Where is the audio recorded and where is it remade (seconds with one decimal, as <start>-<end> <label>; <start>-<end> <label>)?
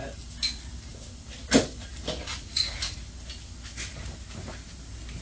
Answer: 0.0-2.3 recorded; 2.3-3.0 remade; 3.0-5.2 recorded